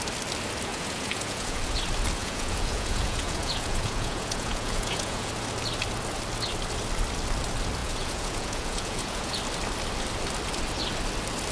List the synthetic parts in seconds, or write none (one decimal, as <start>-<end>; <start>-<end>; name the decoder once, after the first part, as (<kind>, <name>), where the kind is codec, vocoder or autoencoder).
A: 0.7-1.6 (vocoder, Vocos); 2.2-5.3; 7.8-9.4